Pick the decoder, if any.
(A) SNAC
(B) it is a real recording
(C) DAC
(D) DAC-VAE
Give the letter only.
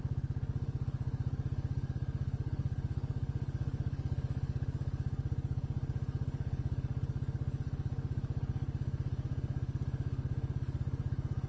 C